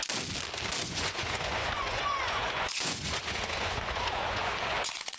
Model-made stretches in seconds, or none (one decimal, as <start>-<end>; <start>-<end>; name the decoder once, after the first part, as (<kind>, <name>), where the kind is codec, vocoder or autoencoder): 0.8-5.2 (vocoder, Vocos)